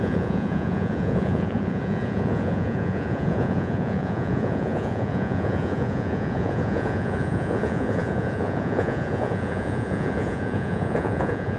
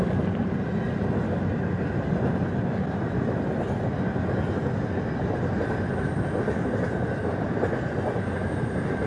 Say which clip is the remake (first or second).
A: first